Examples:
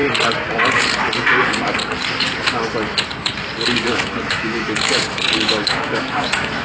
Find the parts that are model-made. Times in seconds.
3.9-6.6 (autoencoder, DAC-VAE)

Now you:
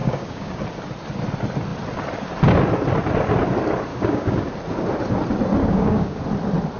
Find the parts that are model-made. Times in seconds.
0.0-0.6 (codec, DAC); 3.9-4.5; 5.6-6.2

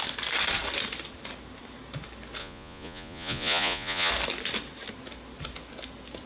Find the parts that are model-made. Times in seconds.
2.4-4.1 (vocoder, Vocos)

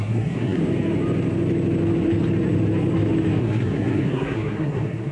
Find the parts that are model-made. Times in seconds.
0.0-0.6 (codec, SNAC); 3.4-5.1

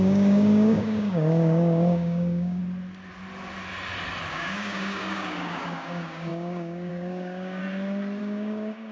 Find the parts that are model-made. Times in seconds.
0.0-2.6 (codec, DAC); 4.3-7.6; 8.2-8.9